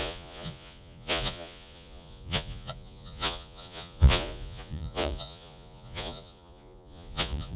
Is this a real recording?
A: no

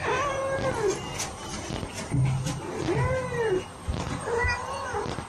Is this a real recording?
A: yes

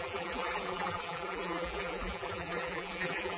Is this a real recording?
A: no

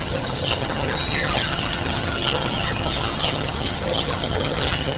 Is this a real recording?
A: no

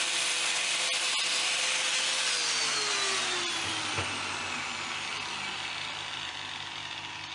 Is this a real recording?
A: yes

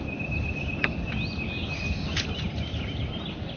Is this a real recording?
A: yes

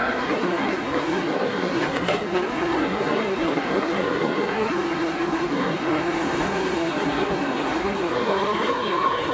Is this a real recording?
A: no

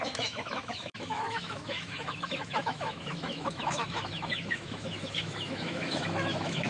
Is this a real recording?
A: no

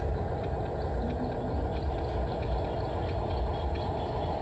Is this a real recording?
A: yes